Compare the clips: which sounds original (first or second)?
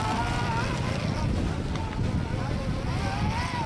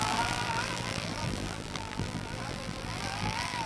first